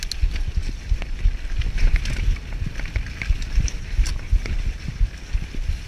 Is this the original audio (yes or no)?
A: yes